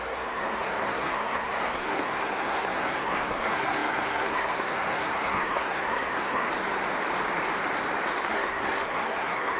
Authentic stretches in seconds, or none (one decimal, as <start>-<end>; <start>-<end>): 6.5-8.3